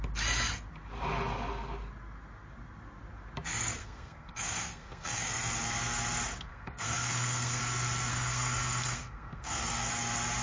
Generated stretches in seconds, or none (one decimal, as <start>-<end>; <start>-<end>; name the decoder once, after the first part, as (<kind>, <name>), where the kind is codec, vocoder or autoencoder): 3.8-5.3 (codec, SNAC); 6.5-7.6; 8.1-9.9

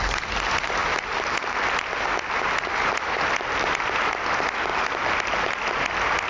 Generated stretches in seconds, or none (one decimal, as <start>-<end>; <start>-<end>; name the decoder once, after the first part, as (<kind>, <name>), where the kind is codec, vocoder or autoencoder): none

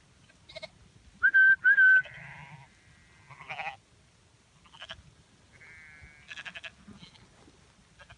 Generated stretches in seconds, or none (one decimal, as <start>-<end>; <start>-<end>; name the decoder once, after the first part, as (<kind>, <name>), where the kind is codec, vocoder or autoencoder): none

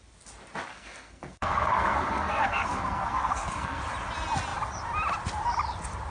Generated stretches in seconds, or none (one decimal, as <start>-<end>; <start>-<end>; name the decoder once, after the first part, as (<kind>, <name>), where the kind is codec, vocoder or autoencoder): 0.7-3.8 (codec, SNAC)

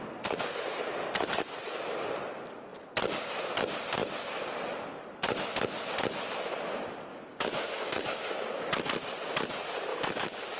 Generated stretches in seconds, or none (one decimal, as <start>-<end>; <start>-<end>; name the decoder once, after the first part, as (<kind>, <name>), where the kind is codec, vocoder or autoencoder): 7.1-8.3 (autoencoder, DAC-VAE); 9.9-10.6

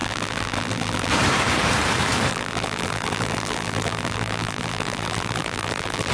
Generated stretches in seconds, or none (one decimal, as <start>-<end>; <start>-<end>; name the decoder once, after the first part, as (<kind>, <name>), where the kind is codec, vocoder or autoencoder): 0.0-1.1 (vocoder, BigVGAN v2); 2.3-6.1

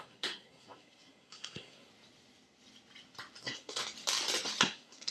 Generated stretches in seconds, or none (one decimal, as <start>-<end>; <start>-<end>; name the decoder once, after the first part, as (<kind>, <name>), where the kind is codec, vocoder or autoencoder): 0.0-1.9 (codec, SNAC); 3.4-3.8; 4.6-5.1